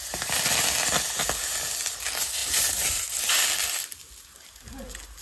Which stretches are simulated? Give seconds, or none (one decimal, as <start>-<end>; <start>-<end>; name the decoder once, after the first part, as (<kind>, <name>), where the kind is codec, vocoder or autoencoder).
2.4-3.2 (vocoder, BigVGAN v2)